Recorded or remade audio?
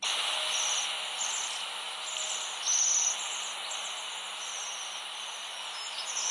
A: recorded